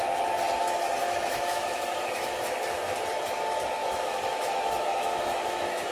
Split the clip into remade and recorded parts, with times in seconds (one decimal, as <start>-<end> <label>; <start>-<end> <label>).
0.0-1.0 recorded; 1.0-2.8 remade; 2.8-3.8 recorded; 3.8-5.9 remade